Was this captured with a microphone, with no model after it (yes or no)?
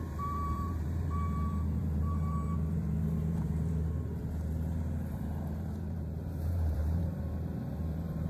no